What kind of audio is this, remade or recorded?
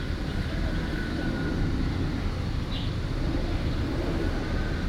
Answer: recorded